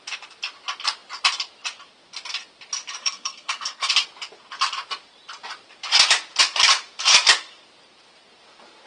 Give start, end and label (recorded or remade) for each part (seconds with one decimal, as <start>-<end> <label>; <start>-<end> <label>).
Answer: 0.0-3.0 recorded; 3.0-3.9 remade; 3.9-8.9 recorded